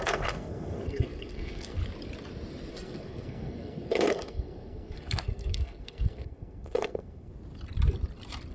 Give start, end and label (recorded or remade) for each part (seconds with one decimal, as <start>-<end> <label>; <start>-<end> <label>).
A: 0.0-1.8 remade; 1.8-2.7 recorded; 2.7-7.3 remade; 7.3-8.5 recorded